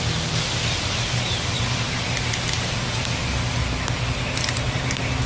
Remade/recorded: recorded